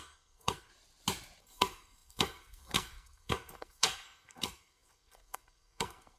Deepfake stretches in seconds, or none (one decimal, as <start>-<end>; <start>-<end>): 0.0-0.7; 1.4-6.2